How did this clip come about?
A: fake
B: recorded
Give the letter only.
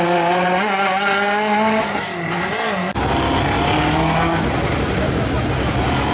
B